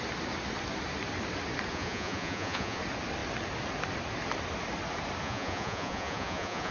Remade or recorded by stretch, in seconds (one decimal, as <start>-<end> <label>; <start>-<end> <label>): 0.0-1.7 recorded; 1.7-2.8 remade; 2.8-5.2 recorded; 5.2-6.7 remade